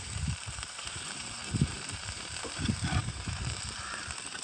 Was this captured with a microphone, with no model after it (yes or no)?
no